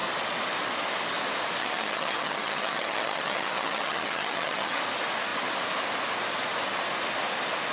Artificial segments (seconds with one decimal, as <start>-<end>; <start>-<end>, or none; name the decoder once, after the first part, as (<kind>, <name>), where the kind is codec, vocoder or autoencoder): 1.6-4.8 (vocoder, HiFi-GAN)